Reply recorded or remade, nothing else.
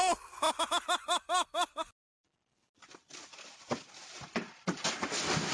recorded